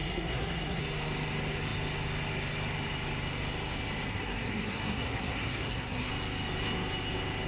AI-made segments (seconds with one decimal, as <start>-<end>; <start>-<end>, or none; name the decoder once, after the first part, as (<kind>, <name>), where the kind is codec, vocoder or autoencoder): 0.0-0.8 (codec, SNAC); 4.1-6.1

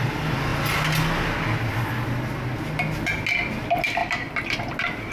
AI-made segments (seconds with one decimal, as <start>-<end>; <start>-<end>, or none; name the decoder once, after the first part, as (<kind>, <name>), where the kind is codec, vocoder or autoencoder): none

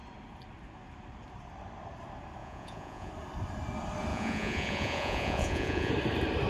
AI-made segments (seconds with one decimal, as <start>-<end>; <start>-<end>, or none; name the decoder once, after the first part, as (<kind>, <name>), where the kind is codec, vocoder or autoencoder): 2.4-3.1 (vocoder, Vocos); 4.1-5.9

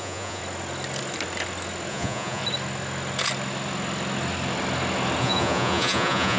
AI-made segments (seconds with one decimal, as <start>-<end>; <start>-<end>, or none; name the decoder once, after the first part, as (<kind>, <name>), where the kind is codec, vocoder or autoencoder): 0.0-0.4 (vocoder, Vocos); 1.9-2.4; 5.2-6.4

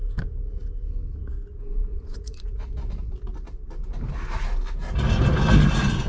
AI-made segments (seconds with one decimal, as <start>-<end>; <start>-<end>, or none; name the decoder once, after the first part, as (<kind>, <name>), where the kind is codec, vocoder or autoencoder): 1.9-2.6 (vocoder, Vocos)

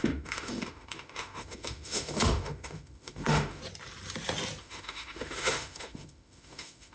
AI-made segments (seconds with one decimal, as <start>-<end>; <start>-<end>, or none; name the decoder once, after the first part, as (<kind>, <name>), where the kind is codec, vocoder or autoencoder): 0.0-3.6 (autoencoder, DAC-VAE); 4.6-6.9